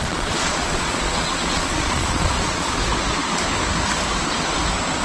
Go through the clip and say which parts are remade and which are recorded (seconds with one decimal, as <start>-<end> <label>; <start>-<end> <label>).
0.0-2.8 remade; 2.8-5.0 recorded